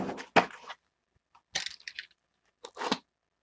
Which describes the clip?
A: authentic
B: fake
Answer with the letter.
A